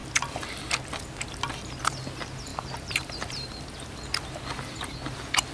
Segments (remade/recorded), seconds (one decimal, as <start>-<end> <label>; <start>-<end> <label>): 0.0-2.5 recorded; 2.5-3.5 remade; 3.5-5.5 recorded

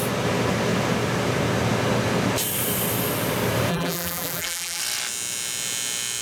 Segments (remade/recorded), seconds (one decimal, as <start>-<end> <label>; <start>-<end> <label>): 0.0-3.7 recorded; 3.7-4.8 remade; 4.8-6.2 recorded

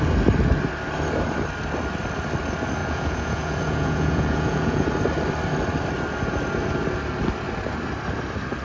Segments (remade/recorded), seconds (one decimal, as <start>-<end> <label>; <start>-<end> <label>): 0.0-2.8 recorded; 2.8-4.9 remade; 4.9-8.6 recorded